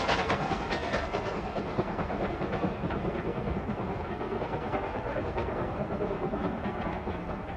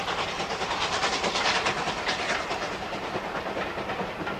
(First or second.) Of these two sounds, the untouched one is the second